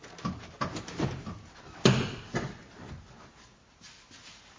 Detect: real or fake real